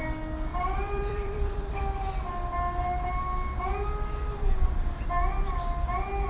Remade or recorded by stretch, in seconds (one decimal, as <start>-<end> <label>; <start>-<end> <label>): 0.0-0.5 recorded; 0.5-1.8 remade; 1.8-6.3 recorded